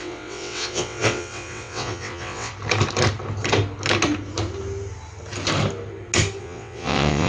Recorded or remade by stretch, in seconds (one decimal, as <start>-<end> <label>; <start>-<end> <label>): 0.0-2.5 remade; 2.5-6.4 recorded; 6.4-7.3 remade